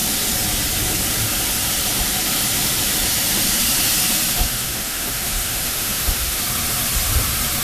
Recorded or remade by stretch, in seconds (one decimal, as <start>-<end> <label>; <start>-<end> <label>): 0.0-4.3 recorded; 4.3-6.4 remade; 6.4-7.6 recorded